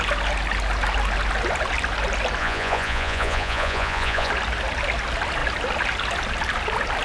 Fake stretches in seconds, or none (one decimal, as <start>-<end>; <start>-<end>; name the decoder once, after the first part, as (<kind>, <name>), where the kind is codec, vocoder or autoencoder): 2.4-4.3 (vocoder, Vocos)